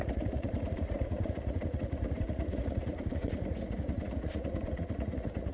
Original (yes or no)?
no